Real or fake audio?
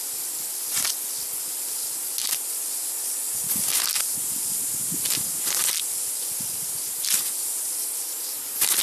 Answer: real